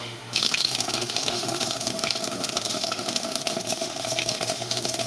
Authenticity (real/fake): fake